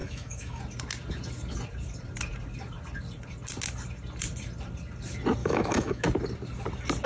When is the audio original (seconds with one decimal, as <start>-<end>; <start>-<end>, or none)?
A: 0.6-5.4; 6.0-7.1